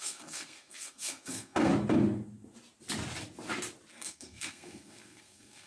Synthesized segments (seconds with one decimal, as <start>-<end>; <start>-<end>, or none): 0.0-1.7; 3.9-5.7

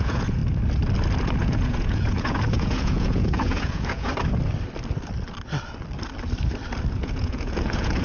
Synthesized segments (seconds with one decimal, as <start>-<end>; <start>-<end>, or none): 0.0-0.4; 1.4-4.1; 6.9-8.0

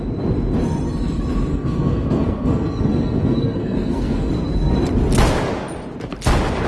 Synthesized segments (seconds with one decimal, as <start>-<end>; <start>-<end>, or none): 1.5-4.3

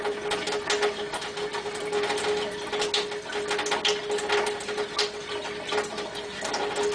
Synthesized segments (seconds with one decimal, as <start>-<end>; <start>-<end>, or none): none

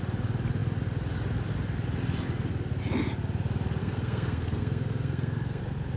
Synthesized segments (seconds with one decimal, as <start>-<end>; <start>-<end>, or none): 3.8-5.6